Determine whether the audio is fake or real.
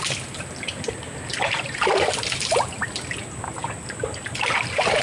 real